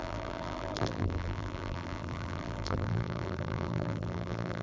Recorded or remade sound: remade